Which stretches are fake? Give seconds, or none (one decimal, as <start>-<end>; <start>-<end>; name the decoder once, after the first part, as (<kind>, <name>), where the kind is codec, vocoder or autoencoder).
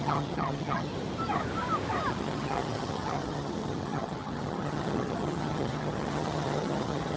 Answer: 0.0-0.9 (vocoder, HiFi-GAN); 2.1-7.2